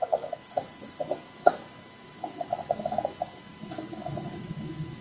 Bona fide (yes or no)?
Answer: yes